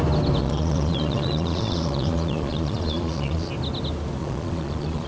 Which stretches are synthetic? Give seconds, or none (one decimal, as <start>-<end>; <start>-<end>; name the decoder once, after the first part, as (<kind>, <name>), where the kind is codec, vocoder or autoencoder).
0.4-3.5 (vocoder, Vocos); 4.2-5.1